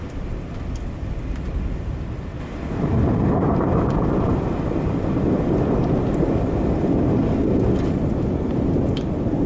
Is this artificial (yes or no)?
no